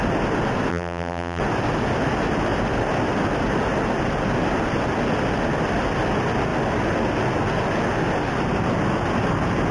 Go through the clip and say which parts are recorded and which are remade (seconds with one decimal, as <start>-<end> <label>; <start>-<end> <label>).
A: 0.0-0.7 recorded; 0.7-1.4 remade; 1.4-9.7 recorded